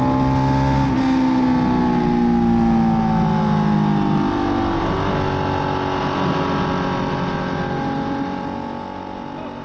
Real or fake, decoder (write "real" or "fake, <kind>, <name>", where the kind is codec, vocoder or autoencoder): real